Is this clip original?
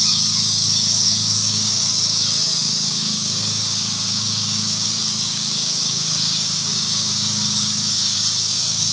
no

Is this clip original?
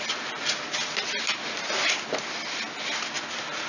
yes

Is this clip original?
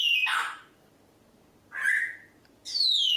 yes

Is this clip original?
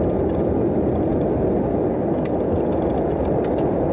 yes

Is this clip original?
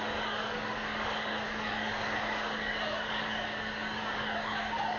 no